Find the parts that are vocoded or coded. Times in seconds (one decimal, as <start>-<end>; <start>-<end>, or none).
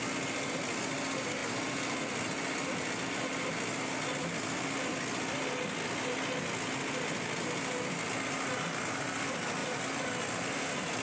none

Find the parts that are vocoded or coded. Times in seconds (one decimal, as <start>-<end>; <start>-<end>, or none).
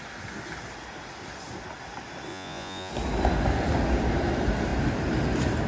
2.3-2.9